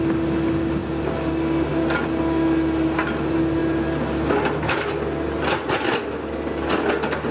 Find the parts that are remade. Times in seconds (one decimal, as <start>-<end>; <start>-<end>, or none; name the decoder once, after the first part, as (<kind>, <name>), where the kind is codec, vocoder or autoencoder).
none